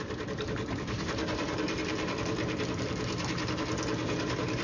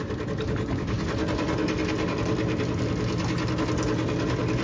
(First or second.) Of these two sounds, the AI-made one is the first